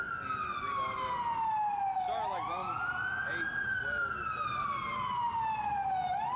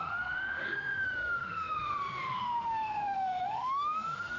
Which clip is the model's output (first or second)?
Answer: second